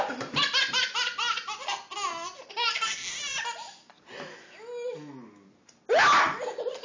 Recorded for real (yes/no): yes